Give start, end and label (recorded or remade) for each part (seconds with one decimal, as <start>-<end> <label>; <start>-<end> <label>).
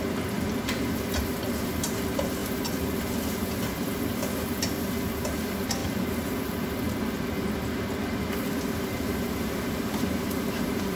0.0-11.0 recorded